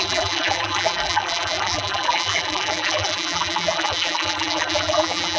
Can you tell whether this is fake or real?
fake